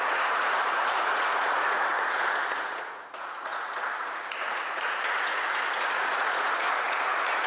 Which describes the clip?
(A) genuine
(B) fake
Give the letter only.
B